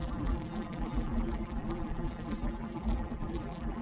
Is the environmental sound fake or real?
fake